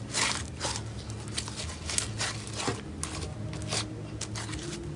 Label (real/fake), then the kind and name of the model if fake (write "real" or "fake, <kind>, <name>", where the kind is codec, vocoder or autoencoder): real